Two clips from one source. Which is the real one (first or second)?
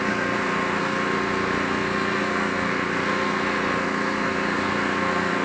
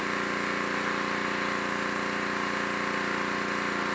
second